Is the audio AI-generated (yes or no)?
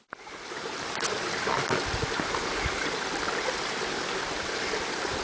no